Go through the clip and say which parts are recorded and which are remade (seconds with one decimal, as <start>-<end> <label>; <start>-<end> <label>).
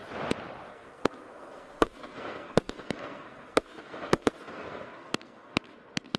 0.0-0.7 recorded; 0.7-6.2 remade